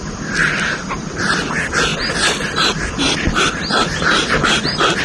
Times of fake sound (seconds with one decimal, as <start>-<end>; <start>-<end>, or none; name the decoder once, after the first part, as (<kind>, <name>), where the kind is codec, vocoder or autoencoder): none